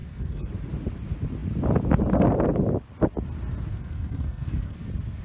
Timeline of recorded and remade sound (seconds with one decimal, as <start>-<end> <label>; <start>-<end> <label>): 0.0-0.5 remade; 0.5-3.7 recorded; 3.7-4.8 remade; 4.8-5.2 recorded

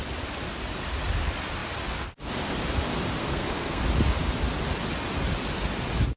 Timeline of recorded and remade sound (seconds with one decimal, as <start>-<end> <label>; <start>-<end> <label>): 0.0-3.2 recorded; 3.2-3.8 remade; 3.8-6.2 recorded

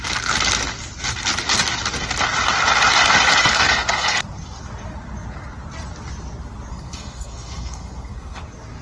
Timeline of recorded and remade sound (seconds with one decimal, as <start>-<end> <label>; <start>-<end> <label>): 0.0-3.4 recorded; 3.4-4.2 remade; 4.2-6.7 recorded; 6.7-8.4 remade; 8.4-8.8 recorded